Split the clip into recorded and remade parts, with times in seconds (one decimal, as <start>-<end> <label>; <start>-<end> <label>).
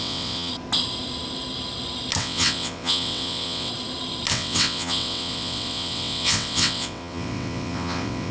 0.0-0.5 remade; 0.5-2.2 recorded; 2.2-3.7 remade; 3.7-4.3 recorded; 4.3-8.3 remade